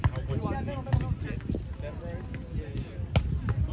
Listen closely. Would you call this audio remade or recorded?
recorded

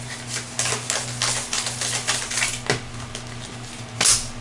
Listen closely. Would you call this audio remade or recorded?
recorded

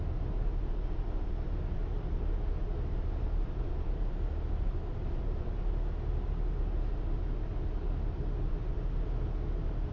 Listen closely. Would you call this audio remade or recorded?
recorded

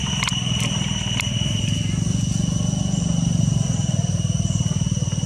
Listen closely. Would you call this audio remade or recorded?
recorded